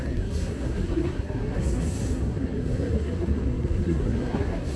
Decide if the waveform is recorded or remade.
remade